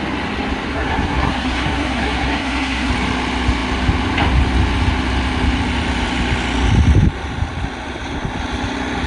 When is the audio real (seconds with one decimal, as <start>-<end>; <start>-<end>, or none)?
0.0-0.7; 2.9-9.1